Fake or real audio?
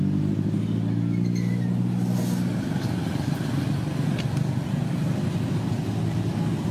real